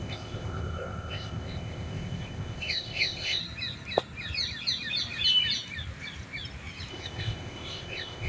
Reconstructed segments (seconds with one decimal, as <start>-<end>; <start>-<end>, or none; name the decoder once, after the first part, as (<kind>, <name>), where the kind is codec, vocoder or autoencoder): 0.0-3.4 (codec, ZipCodec); 6.9-8.3